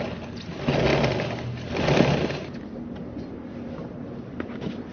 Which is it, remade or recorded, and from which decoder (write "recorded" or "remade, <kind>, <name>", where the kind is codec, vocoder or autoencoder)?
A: recorded